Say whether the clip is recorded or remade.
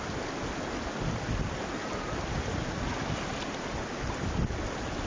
recorded